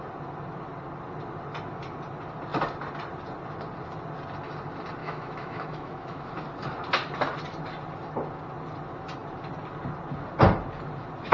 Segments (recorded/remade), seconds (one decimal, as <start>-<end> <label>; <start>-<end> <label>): 0.0-5.0 recorded; 5.0-6.3 remade; 6.3-11.3 recorded